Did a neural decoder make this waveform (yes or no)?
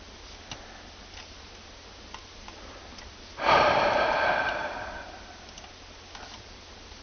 no